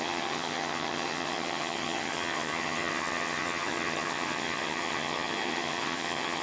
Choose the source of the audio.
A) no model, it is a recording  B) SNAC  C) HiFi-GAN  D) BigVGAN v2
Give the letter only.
C